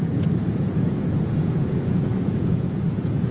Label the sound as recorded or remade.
remade